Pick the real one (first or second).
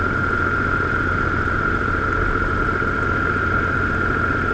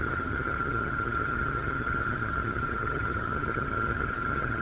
first